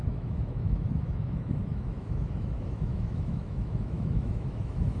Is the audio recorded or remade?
remade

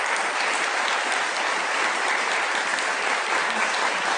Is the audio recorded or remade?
recorded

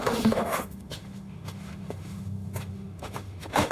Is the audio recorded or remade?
remade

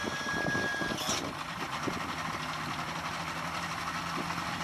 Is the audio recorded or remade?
recorded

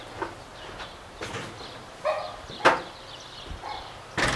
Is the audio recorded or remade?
recorded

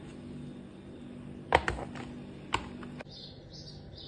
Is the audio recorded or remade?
recorded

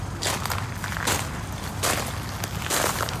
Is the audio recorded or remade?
recorded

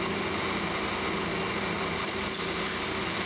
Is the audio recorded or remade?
recorded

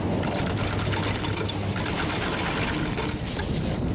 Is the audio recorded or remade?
recorded